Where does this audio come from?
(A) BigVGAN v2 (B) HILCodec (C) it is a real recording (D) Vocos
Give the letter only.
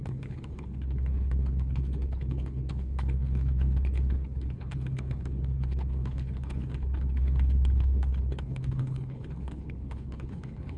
B